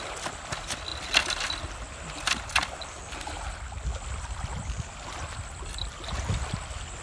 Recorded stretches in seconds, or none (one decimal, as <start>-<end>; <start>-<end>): 0.0-7.0